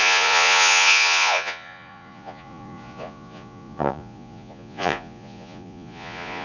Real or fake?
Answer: fake